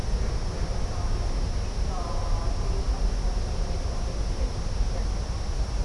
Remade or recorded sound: recorded